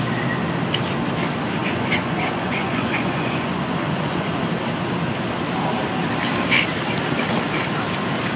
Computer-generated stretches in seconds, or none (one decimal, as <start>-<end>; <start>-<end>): 1.6-4.4